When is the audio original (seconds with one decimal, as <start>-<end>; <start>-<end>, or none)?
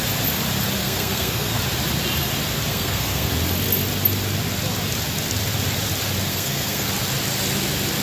0.0-0.8; 1.6-2.7; 3.3-6.3; 6.9-8.0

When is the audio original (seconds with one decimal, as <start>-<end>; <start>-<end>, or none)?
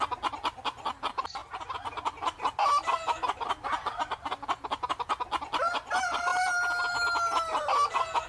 0.0-8.3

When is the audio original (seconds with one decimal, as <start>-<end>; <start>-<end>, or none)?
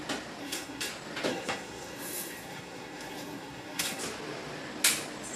0.0-0.4; 0.9-1.3; 4.0-5.4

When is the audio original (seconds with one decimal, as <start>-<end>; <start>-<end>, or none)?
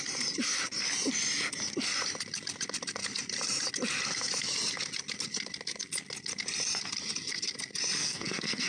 0.0-8.0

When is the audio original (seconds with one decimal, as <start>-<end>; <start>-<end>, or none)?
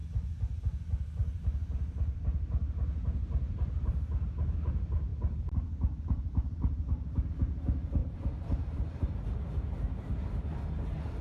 0.0-1.2; 3.9-5.1; 7.3-8.0; 9.0-11.2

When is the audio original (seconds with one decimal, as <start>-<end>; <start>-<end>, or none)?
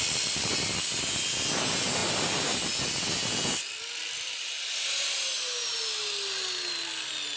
0.0-7.4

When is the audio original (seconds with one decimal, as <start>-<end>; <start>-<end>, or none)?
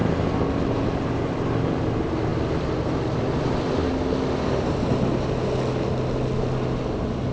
0.0-7.3